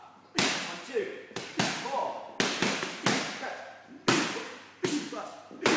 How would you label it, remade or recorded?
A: recorded